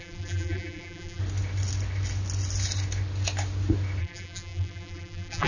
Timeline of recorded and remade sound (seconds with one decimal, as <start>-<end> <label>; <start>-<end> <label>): 0.0-1.2 remade; 1.2-4.0 recorded; 4.0-5.5 remade